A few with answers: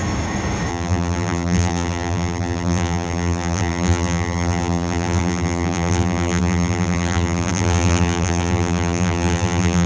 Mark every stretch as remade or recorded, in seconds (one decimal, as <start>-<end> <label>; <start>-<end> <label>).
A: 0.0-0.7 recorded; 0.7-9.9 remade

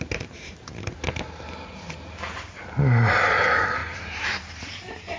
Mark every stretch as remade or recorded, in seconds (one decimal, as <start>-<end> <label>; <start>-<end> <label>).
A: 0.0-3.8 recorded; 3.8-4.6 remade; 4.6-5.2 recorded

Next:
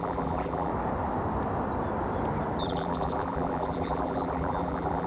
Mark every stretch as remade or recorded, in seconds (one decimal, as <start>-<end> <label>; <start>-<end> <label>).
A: 0.0-0.7 remade; 0.7-2.6 recorded; 2.6-5.1 remade